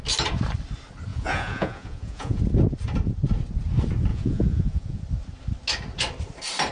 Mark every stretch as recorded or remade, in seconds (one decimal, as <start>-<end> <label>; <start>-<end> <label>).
0.0-1.1 recorded; 1.1-2.4 remade; 2.4-4.1 recorded; 4.1-5.0 remade; 5.0-6.7 recorded